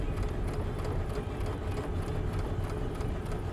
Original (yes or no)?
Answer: yes